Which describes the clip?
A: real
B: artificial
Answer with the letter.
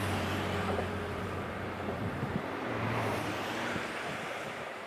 B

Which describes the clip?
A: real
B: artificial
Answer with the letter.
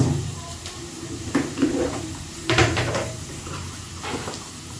B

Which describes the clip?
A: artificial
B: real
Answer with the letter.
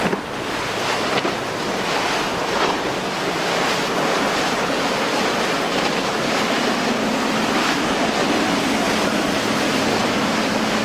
B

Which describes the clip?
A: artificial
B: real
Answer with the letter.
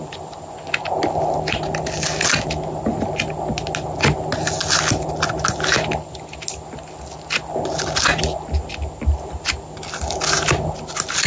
B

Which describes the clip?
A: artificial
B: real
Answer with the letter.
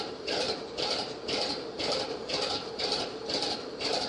A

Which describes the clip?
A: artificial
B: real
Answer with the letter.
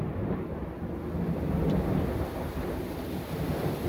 B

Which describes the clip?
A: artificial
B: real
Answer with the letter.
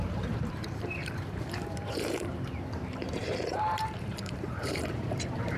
A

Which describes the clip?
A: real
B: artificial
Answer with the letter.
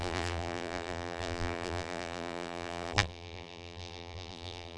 B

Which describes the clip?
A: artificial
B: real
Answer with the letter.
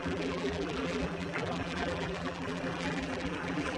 A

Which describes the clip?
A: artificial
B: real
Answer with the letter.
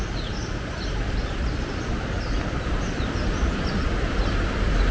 A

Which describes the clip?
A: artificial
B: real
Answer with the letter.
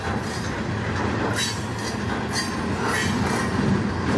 B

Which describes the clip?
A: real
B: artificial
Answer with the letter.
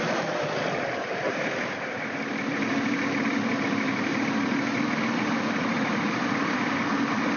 B